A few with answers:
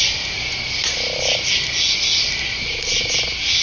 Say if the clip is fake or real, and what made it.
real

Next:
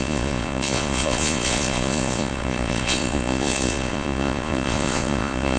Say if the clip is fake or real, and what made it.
fake, vocoder, Vocos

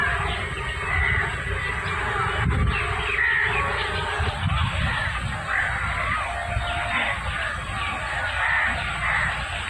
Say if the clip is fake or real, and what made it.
real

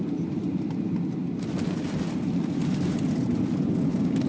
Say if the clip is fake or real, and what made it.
fake, vocoder, BigVGAN v2